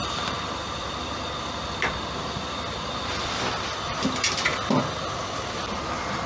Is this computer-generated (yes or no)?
no